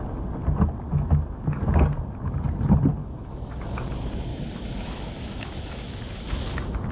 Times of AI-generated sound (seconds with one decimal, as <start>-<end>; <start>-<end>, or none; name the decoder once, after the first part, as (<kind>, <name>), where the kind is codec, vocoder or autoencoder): 0.9-1.6 (autoencoder, DAC-VAE); 3.0-3.7; 4.3-6.0